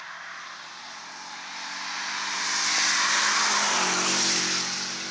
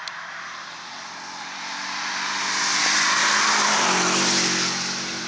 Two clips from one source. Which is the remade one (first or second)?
second